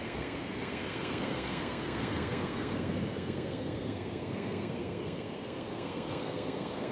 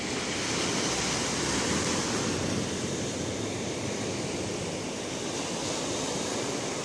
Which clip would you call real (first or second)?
second